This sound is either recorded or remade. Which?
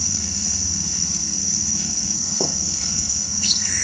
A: remade